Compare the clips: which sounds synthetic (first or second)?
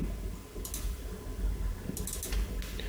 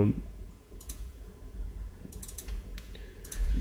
second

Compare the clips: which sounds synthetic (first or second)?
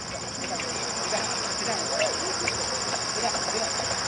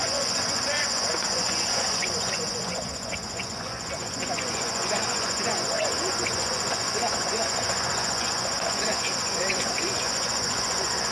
second